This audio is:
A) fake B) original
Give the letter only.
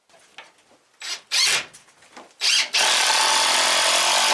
B